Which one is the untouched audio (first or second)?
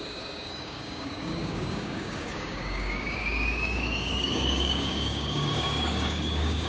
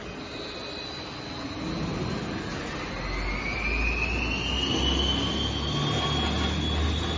second